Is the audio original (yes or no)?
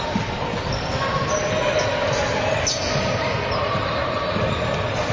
yes